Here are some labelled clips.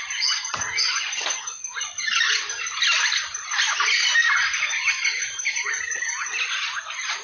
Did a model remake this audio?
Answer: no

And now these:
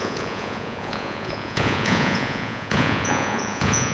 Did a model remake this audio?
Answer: yes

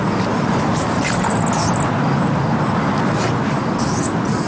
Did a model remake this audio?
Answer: no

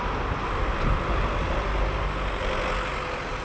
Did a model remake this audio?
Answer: no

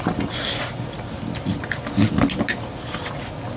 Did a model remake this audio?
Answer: no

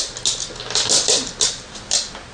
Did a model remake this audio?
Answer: no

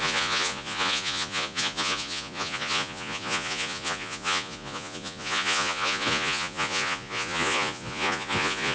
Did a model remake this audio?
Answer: yes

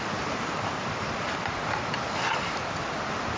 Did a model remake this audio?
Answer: no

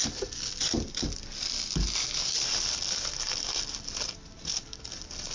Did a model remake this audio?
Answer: no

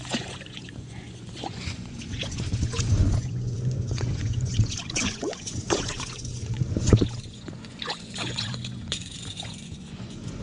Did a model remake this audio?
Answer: yes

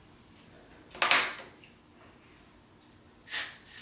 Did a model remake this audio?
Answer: no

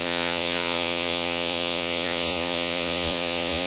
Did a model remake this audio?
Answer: yes